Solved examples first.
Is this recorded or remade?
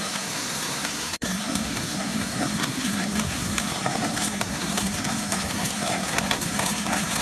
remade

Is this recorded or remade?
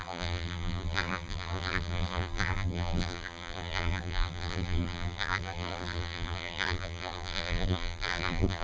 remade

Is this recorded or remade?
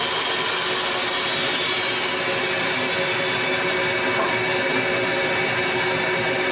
recorded